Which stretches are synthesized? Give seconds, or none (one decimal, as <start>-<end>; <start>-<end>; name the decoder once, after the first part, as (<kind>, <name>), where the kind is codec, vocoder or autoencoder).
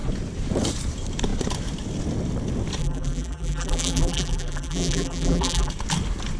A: 2.8-5.7 (vocoder, BigVGAN v2)